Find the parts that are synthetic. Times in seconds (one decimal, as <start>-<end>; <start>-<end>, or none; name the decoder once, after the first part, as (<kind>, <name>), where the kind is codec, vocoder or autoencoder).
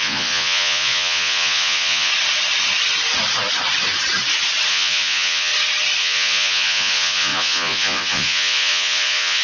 0.0-2.1 (vocoder, Vocos); 4.7-5.5; 6.0-9.4